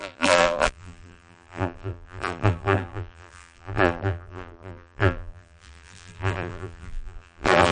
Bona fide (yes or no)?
no